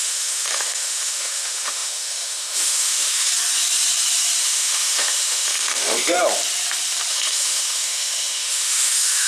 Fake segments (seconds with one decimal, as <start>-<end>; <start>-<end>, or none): 0.0-3.3; 4.4-6.2; 7.1-9.3